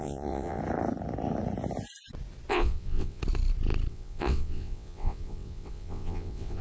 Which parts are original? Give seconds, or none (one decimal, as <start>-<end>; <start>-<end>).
0.6-2.5; 3.2-3.9